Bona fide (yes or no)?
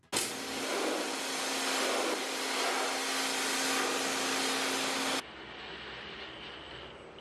yes